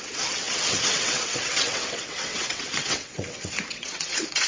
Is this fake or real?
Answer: fake